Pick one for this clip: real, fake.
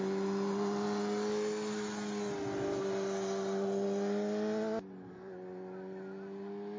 real